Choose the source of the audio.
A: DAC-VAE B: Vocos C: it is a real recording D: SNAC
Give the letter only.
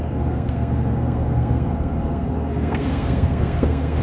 D